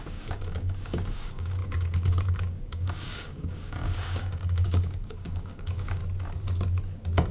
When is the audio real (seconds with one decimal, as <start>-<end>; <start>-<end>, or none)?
6.0-7.3